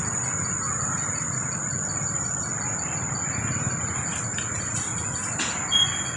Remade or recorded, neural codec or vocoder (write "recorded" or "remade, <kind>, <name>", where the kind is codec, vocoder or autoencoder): recorded